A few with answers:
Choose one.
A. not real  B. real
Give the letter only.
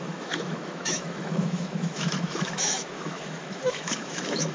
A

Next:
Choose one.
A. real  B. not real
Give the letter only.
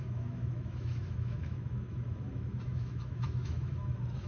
B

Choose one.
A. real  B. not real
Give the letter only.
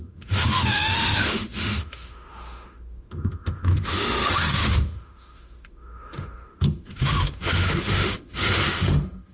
B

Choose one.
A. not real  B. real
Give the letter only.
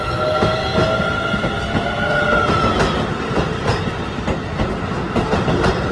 B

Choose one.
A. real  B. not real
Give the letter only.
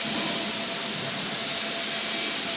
A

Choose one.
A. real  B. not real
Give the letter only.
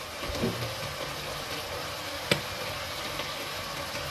A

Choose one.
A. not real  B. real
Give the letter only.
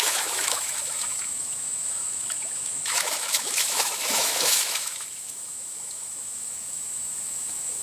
A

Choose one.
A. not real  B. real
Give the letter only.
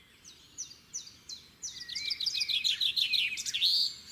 B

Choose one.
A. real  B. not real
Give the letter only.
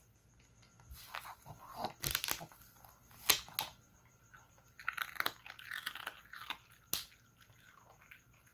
A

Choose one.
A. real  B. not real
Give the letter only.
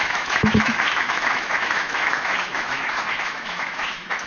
B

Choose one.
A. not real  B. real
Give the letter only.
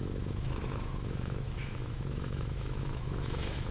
A